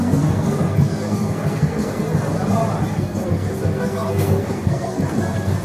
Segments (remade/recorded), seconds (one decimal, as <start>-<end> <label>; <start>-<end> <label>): 0.0-2.0 remade; 2.0-2.9 recorded; 2.9-5.6 remade